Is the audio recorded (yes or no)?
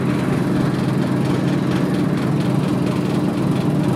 yes